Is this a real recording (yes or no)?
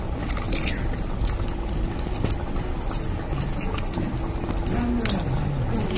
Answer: yes